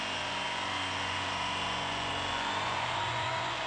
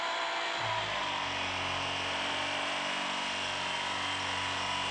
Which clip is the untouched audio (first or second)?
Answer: second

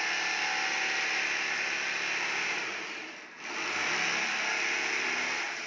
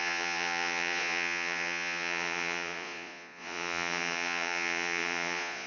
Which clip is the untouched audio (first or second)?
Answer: first